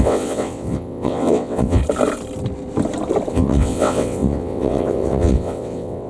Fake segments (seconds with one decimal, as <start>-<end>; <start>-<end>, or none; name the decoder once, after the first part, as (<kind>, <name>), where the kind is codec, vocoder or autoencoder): 0.0-1.8 (vocoder, WaveNeXt); 3.3-6.1